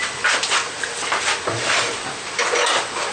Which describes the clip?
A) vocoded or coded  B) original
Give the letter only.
B